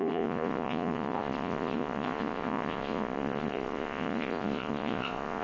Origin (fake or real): fake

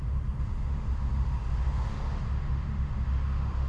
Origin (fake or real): fake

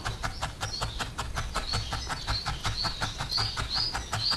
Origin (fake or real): real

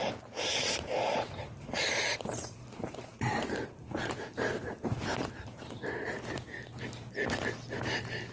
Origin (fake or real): fake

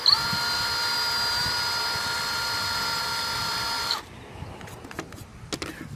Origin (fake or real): real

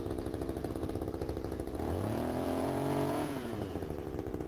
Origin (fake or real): fake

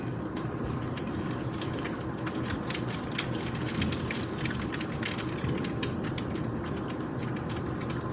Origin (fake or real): real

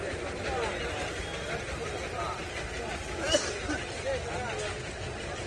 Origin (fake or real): real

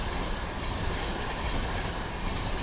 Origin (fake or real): real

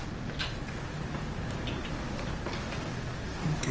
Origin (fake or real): real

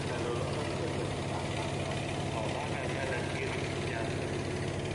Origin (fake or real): real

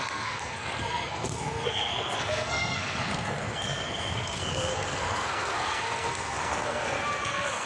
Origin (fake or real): fake